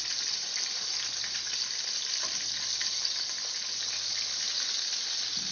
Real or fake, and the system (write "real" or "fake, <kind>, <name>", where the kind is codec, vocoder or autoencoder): real